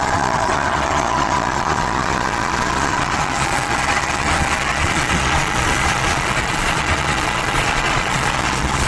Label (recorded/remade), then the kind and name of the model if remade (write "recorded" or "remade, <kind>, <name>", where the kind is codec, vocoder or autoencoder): remade, vocoder, Vocos